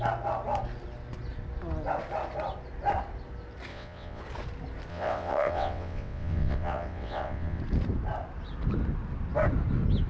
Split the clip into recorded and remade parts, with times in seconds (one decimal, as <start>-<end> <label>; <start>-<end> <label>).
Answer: 0.0-3.7 recorded; 3.7-4.2 remade; 4.2-4.9 recorded; 4.9-7.6 remade; 7.6-10.1 recorded